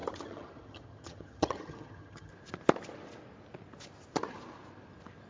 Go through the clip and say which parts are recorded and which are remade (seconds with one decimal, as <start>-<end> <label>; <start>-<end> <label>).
0.0-2.3 remade; 2.3-5.3 recorded